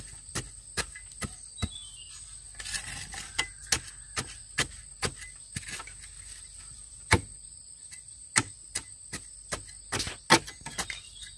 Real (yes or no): yes